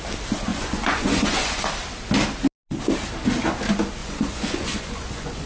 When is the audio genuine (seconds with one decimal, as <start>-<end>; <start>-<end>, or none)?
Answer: 0.0-0.5; 1.7-4.0